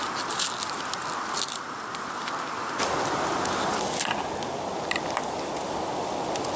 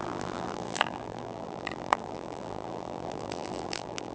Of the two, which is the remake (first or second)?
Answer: second